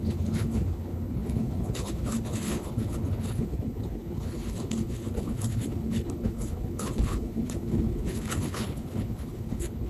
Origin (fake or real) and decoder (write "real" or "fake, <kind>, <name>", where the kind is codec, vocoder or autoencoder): fake, codec, HILCodec